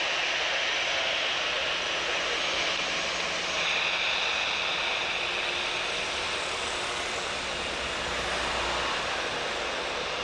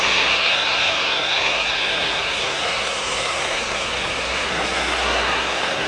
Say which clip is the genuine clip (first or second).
first